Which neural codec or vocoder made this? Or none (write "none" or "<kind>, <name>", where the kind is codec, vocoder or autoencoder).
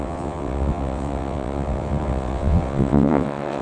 vocoder, WaveNeXt